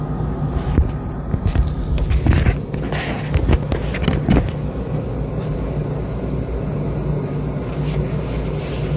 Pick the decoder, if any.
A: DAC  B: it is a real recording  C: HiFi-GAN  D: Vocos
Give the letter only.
B